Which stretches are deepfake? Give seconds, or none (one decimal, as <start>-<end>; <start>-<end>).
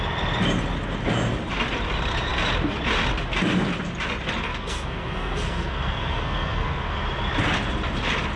4.5-7.0